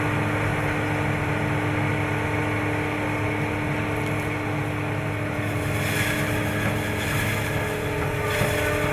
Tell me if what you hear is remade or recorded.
recorded